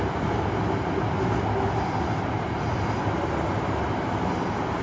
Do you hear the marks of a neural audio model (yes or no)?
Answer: no